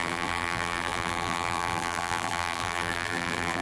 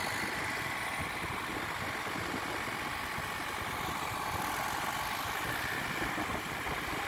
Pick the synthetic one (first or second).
first